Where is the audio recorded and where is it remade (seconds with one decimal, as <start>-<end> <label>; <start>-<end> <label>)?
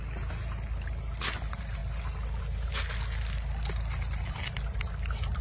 0.0-5.4 recorded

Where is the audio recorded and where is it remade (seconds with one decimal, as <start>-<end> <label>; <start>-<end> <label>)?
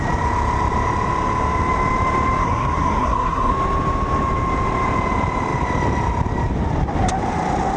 0.0-2.4 recorded; 2.4-3.5 remade; 3.5-7.8 recorded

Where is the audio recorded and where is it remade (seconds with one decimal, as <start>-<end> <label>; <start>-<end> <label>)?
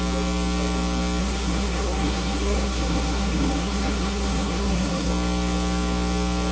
0.0-1.2 recorded; 1.2-5.1 remade; 5.1-6.5 recorded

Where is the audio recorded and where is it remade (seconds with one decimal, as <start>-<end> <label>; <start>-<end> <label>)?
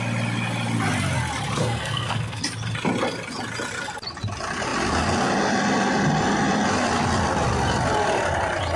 0.0-1.6 recorded; 1.6-2.4 remade; 2.4-8.8 recorded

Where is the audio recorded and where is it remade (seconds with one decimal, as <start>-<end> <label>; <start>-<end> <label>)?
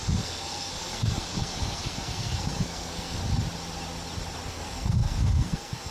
0.0-3.2 remade; 3.2-4.5 recorded; 4.5-5.9 remade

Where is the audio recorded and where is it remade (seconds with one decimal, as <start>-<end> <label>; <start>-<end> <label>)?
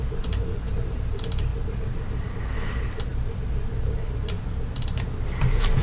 0.0-5.8 recorded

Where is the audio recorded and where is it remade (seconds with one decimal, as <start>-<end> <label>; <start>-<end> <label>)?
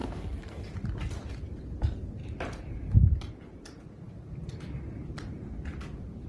0.0-0.6 remade; 0.6-6.3 recorded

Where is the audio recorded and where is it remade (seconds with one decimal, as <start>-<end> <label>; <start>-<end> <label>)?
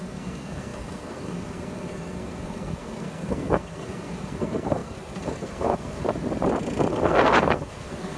0.0-6.0 remade; 6.0-6.9 recorded; 6.9-8.2 remade